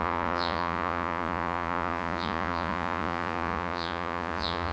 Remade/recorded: remade